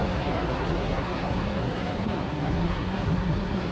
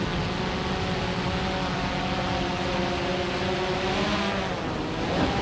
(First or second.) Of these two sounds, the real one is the second